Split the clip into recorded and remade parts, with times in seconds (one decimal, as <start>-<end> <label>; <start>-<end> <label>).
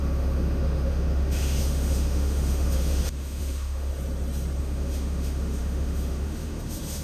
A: 0.0-3.9 remade; 3.9-4.6 recorded; 4.6-7.0 remade